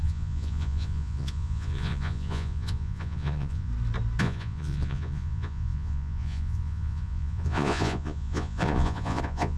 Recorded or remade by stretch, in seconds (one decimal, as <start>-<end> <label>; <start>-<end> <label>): 0.0-3.7 remade; 3.7-4.2 recorded; 4.2-9.6 remade